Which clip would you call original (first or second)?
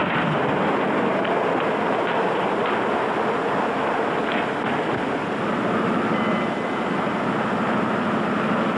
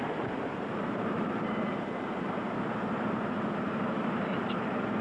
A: first